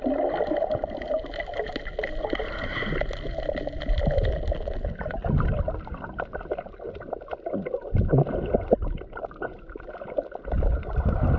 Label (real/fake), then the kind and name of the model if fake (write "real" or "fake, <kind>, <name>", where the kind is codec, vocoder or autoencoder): real